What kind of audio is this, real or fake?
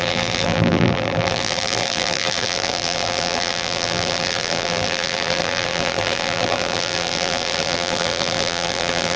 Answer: fake